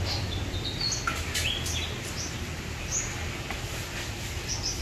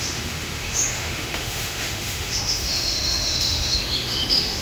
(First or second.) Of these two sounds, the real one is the first